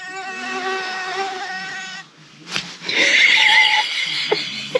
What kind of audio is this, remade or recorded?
recorded